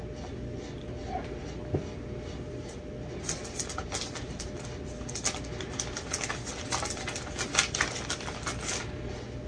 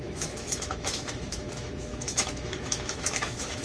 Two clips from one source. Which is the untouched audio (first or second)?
first